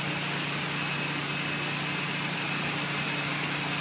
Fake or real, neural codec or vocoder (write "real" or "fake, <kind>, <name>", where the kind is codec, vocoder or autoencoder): real